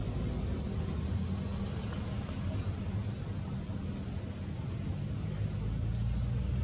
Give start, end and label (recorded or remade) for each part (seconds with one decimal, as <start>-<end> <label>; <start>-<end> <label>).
0.0-6.6 recorded